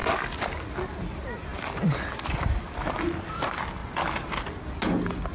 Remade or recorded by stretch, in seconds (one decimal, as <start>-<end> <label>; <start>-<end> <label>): 0.0-5.3 recorded